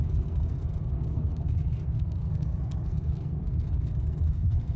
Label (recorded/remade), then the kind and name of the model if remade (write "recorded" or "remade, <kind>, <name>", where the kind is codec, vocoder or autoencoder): remade, codec, SNAC